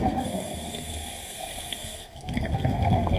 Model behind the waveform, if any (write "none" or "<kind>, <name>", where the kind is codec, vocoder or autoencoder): codec, SNAC